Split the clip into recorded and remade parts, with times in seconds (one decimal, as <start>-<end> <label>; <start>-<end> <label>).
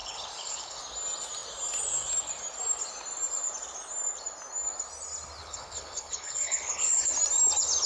0.0-0.8 remade; 0.8-5.4 recorded; 5.4-7.1 remade; 7.1-7.9 recorded